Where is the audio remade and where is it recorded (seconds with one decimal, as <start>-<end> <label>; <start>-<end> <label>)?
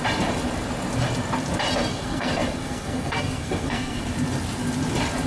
0.0-1.9 recorded; 1.9-4.0 remade; 4.0-5.3 recorded